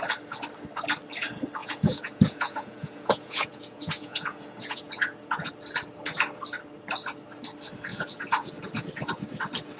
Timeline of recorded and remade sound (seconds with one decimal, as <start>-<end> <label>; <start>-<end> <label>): 0.0-1.6 recorded; 1.6-5.5 remade; 5.5-7.9 recorded; 7.9-8.5 remade; 8.5-9.8 recorded